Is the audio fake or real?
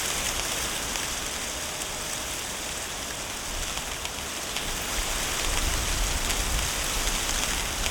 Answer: real